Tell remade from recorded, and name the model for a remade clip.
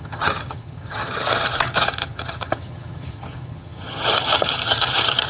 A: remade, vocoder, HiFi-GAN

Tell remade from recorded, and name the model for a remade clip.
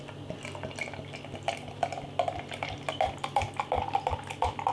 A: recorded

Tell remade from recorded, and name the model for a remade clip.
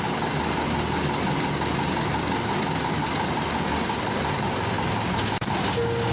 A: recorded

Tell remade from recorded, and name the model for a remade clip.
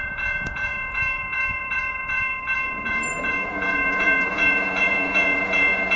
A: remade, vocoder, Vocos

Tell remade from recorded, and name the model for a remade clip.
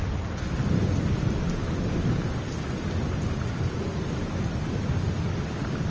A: recorded